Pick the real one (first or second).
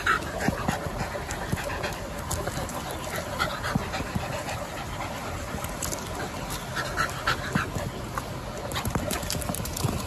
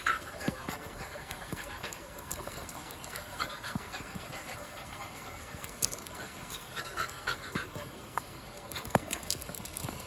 first